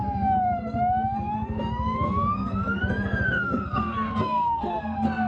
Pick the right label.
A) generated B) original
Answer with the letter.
A